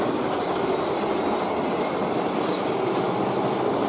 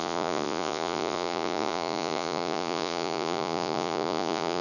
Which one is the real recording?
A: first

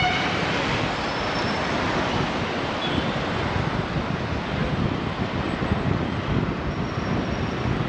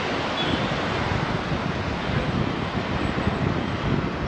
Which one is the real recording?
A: second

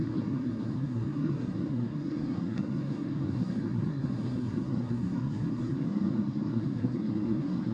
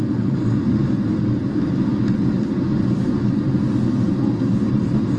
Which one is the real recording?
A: second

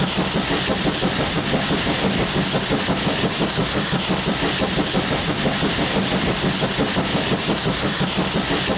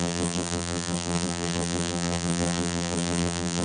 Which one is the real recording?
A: first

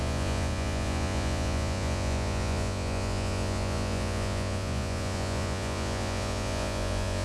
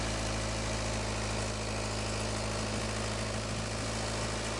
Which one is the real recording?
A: second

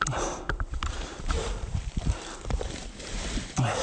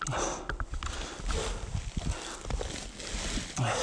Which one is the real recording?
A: second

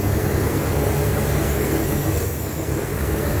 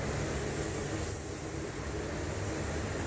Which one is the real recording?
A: second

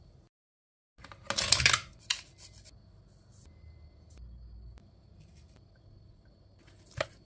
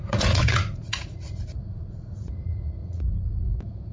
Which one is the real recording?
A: first